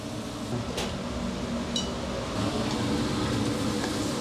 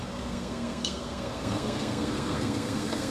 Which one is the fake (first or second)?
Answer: second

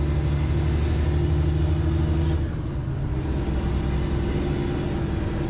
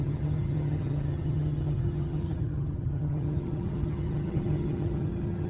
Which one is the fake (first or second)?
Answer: second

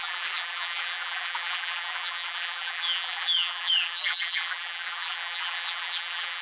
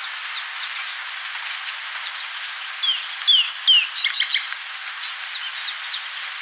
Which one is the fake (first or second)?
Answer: first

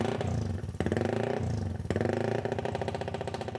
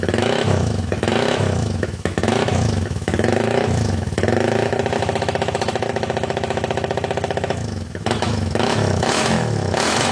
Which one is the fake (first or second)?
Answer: second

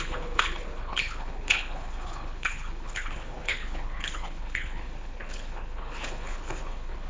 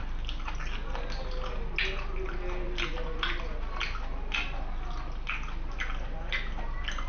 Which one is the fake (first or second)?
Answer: first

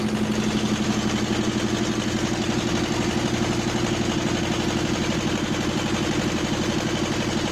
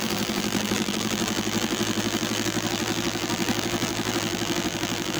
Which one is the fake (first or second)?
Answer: second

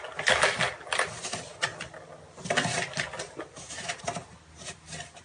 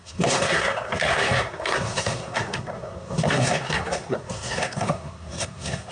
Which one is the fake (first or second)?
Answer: second